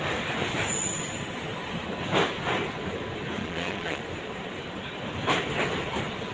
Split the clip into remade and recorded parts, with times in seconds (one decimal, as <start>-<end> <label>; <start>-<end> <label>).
0.0-3.4 recorded; 3.4-4.0 remade; 4.0-6.3 recorded